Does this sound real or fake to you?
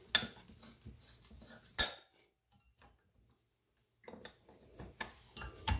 real